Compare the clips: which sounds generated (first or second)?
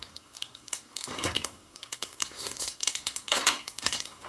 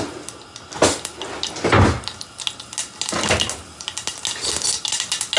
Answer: first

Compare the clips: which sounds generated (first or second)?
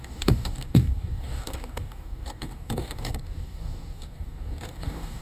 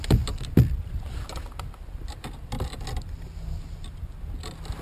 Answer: first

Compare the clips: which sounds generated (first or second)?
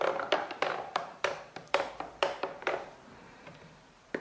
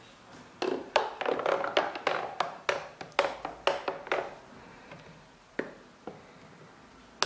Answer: first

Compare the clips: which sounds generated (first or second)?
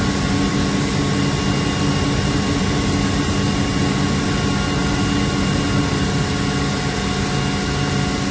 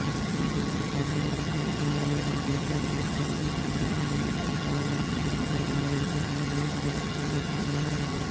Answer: second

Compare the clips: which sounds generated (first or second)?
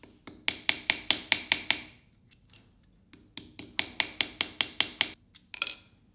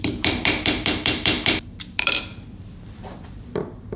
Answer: second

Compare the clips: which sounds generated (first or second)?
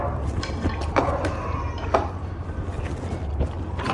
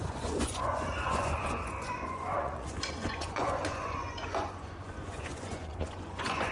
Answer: second